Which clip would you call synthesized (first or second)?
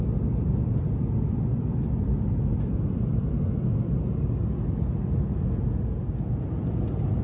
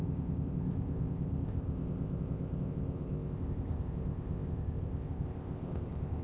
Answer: second